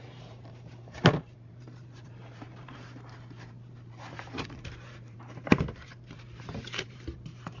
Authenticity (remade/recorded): remade